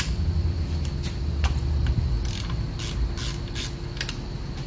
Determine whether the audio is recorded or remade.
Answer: recorded